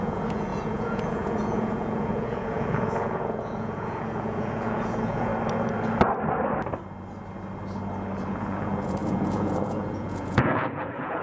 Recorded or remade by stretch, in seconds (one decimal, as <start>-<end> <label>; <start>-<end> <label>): 0.0-5.3 remade; 5.3-8.3 recorded; 8.3-11.2 remade